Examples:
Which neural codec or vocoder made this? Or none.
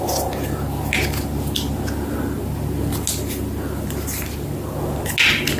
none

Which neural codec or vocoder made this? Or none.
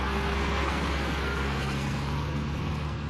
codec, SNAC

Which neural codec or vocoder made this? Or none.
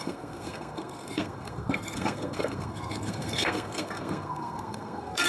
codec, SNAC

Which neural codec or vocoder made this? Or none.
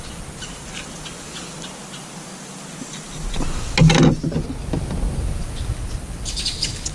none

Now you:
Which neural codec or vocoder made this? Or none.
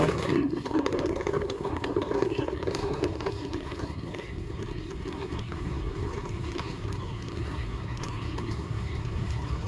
codec, SNAC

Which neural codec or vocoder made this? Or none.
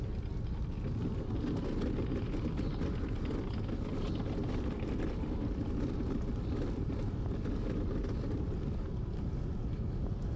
none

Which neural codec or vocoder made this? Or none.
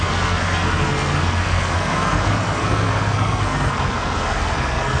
codec, SNAC